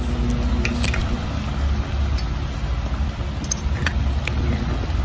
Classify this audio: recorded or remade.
recorded